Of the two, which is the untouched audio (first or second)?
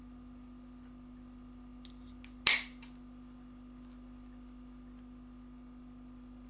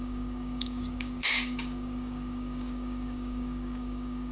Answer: first